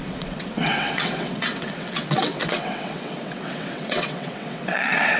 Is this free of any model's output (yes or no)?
no